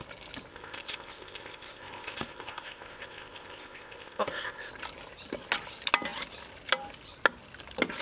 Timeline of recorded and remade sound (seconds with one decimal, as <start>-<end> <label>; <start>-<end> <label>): 0.0-0.5 recorded; 0.5-4.7 remade; 4.7-8.0 recorded

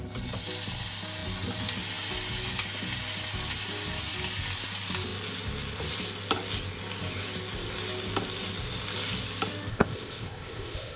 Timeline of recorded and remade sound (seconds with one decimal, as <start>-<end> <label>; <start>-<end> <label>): 0.0-9.7 recorded; 9.7-11.0 remade

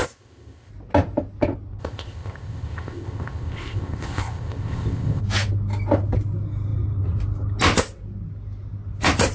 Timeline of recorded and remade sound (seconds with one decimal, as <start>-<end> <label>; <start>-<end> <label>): 0.0-0.7 remade; 0.7-1.8 recorded; 1.8-5.2 remade; 5.2-9.3 recorded

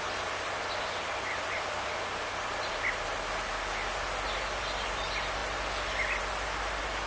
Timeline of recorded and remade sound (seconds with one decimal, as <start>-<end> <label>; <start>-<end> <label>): 0.0-7.1 recorded